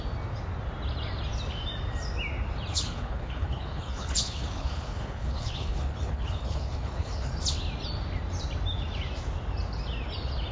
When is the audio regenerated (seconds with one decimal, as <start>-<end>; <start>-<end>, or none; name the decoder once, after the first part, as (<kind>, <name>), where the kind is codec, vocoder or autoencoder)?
2.7-7.3 (codec, HILCodec)